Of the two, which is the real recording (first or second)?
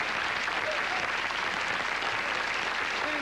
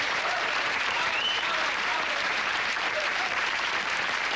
first